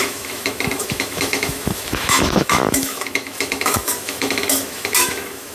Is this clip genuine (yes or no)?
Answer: no